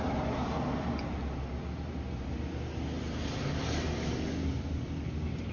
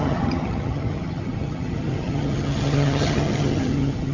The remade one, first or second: second